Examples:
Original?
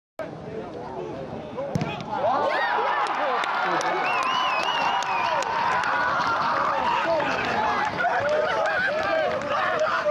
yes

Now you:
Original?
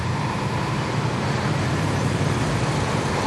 no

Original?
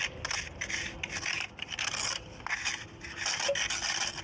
yes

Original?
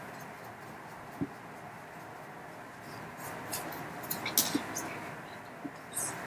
yes